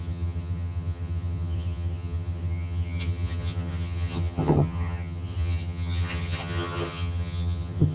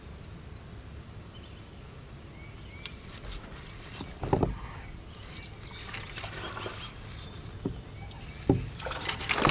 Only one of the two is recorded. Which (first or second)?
second